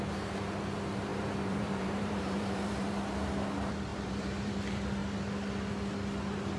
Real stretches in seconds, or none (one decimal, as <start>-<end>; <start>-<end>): 0.0-1.1; 2.9-3.9; 4.5-6.6